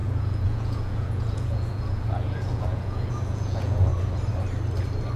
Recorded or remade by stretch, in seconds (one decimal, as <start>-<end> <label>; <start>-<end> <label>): 0.0-3.9 remade; 3.9-5.2 recorded